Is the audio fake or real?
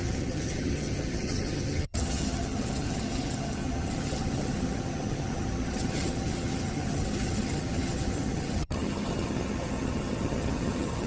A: fake